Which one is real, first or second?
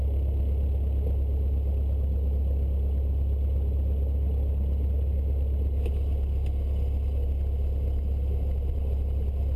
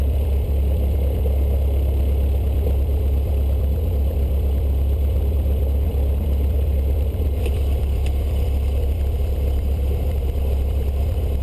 first